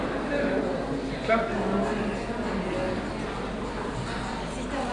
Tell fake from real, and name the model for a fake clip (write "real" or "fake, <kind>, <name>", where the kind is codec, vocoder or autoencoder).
real